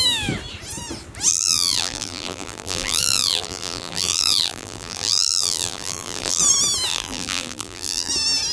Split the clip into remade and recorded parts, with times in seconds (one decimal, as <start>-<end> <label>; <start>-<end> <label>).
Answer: 0.0-1.3 recorded; 1.3-6.4 remade; 6.4-6.9 recorded; 6.9-8.1 remade; 8.1-8.5 recorded